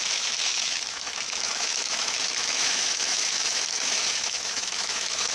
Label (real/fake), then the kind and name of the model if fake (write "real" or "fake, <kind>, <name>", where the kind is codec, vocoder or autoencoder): fake, autoencoder, DAC-VAE